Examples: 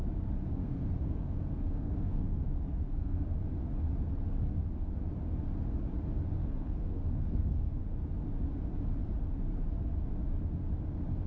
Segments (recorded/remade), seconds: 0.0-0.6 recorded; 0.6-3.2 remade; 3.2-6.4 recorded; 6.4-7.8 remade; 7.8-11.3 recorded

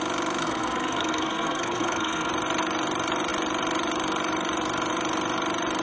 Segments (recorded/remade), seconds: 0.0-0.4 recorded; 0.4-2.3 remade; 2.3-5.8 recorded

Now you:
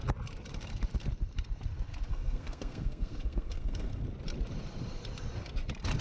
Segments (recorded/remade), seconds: 0.0-2.1 recorded; 2.1-4.0 remade; 4.0-6.0 recorded

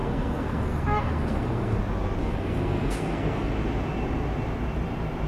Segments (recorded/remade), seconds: 0.0-1.8 remade; 1.8-2.2 recorded; 2.2-3.5 remade; 3.5-5.3 recorded

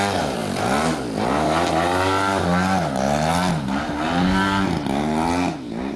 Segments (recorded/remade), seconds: 0.0-6.0 recorded

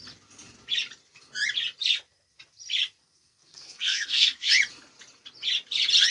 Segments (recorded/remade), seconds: 0.0-3.0 recorded; 3.0-4.5 remade; 4.5-6.1 recorded

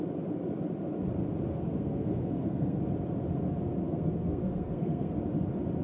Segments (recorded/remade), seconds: 0.0-1.5 recorded; 1.5-2.8 remade; 2.8-3.8 recorded; 3.8-5.1 remade; 5.1-5.8 recorded

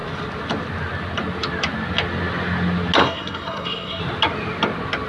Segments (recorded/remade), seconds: 0.0-3.0 recorded; 3.0-4.0 remade; 4.0-5.1 recorded